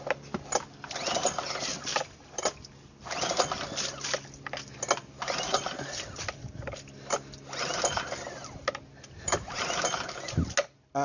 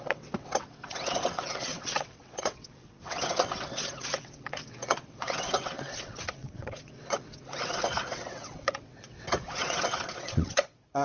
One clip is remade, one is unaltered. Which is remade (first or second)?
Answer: second